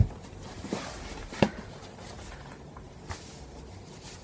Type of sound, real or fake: real